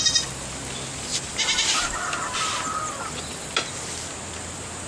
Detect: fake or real real